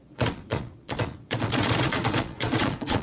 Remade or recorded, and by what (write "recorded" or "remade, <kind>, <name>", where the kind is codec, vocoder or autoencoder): remade, vocoder, Vocos